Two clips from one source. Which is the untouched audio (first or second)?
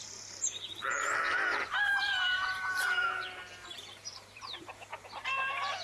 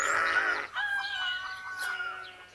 second